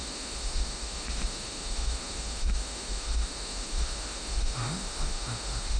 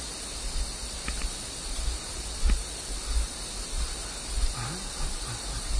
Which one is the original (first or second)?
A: second